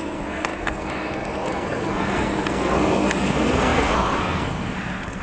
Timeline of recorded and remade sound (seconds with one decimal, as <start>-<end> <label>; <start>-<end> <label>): 0.0-5.2 remade